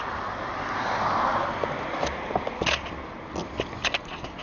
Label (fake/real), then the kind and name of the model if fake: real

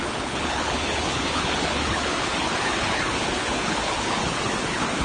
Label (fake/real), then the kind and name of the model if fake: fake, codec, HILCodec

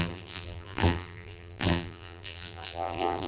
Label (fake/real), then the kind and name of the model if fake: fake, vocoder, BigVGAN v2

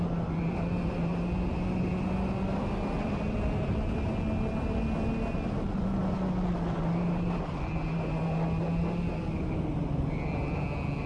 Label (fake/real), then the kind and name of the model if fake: real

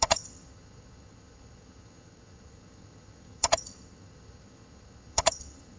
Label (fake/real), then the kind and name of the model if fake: fake, vocoder, HiFi-GAN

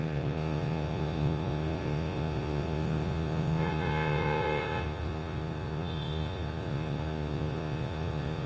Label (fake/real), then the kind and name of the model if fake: fake, vocoder, Vocos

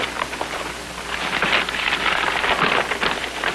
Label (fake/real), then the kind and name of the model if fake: real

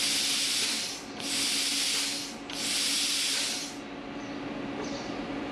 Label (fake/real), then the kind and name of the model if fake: real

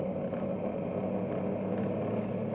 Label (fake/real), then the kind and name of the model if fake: real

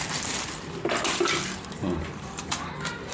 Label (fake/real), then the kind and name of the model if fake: real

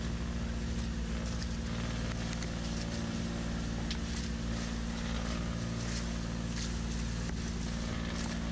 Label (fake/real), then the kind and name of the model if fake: real